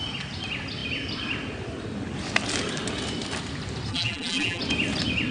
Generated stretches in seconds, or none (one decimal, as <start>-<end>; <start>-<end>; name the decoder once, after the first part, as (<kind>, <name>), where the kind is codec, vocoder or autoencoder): 3.9-4.6 (vocoder, BigVGAN v2)